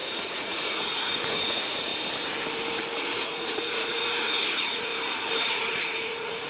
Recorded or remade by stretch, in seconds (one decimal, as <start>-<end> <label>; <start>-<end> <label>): 0.0-1.9 remade; 1.9-3.0 recorded; 3.0-4.9 remade; 4.9-5.4 recorded; 5.4-6.5 remade

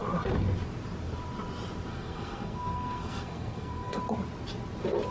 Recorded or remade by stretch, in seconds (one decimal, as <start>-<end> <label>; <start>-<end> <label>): 0.0-1.9 recorded; 1.9-4.0 remade; 4.0-5.1 recorded

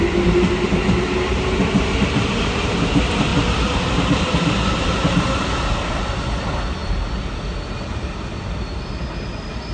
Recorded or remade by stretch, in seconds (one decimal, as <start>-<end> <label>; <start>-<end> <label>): 0.0-9.7 recorded

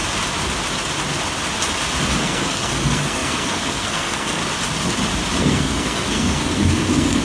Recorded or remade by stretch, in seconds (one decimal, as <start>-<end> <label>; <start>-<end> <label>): 0.0-2.2 recorded; 2.2-4.4 remade; 4.4-5.4 recorded; 5.4-7.2 remade

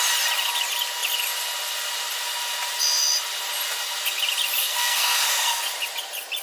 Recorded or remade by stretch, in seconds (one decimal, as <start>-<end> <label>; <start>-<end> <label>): 0.0-4.6 recorded; 4.6-5.6 remade; 5.6-6.4 recorded